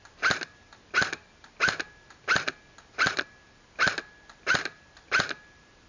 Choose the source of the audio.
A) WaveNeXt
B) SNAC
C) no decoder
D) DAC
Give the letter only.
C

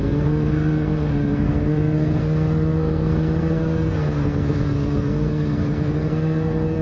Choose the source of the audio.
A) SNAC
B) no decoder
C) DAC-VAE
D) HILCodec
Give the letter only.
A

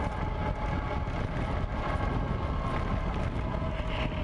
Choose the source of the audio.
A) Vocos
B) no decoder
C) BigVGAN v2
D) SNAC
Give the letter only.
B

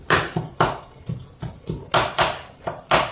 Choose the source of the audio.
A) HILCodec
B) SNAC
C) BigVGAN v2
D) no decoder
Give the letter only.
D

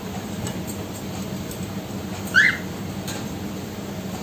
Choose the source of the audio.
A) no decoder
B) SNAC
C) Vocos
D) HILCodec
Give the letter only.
A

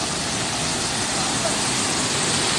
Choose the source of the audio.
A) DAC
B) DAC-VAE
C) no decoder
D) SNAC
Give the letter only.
C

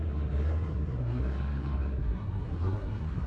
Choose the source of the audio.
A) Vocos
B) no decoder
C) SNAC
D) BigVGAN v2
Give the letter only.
C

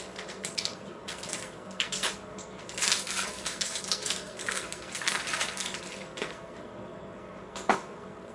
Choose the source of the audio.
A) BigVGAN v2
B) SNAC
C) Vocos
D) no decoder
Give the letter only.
B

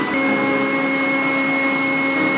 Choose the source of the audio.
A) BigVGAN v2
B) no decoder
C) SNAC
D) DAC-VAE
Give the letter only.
B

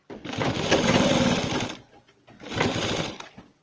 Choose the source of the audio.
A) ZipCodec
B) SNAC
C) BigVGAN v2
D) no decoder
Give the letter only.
D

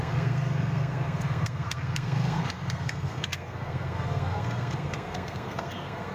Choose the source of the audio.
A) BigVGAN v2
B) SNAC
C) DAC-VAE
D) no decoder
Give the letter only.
B